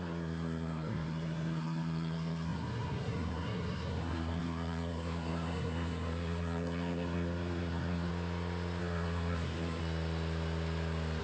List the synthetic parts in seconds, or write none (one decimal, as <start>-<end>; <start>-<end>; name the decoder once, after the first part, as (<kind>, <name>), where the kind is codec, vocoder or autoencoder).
0.0-8.1 (codec, SNAC); 8.8-9.8